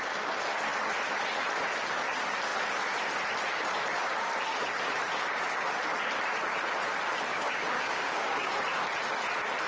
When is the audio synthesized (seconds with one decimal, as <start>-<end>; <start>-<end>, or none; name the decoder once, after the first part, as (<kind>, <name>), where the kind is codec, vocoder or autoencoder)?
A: 7.3-8.5 (codec, DAC)